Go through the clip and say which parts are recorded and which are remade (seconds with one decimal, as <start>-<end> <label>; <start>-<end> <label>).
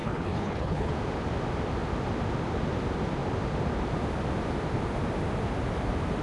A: 0.0-0.9 remade; 0.9-6.2 recorded